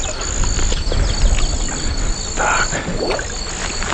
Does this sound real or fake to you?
real